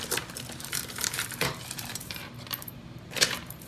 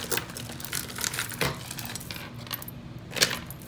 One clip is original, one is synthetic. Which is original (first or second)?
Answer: second